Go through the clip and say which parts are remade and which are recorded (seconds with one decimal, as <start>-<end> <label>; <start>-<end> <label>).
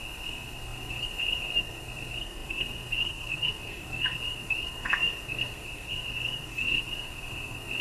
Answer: 0.0-7.8 remade